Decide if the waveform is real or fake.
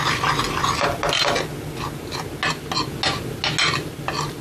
real